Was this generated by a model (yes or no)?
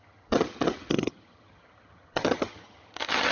yes